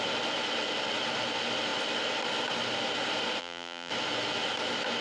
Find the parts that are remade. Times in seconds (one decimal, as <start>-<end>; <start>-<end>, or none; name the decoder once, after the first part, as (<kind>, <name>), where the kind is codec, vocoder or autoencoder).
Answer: 3.4-3.9 (vocoder, BigVGAN v2)